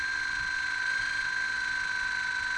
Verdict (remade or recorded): recorded